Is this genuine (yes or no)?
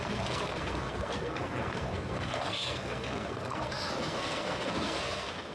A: no